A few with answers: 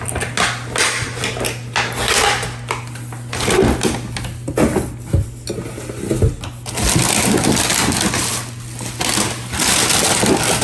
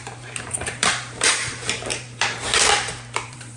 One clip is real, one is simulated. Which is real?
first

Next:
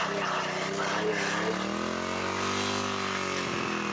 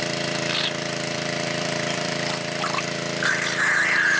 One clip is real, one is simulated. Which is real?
first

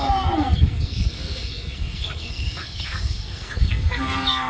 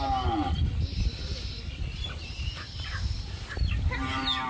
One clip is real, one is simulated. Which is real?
second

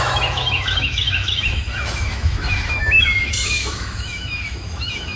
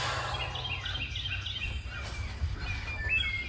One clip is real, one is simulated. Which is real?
second